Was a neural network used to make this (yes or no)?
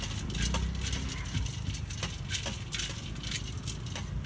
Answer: no